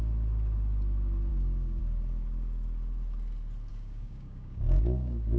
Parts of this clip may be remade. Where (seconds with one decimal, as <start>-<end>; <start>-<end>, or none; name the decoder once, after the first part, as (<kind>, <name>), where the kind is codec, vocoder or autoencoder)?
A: 1.3-1.8 (codec, DAC); 3.7-5.4